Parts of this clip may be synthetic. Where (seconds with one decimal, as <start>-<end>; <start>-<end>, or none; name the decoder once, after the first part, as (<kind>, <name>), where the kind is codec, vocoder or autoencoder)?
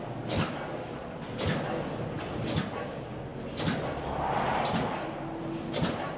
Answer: none